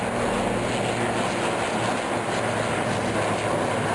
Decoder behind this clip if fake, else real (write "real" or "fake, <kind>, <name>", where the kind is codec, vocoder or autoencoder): real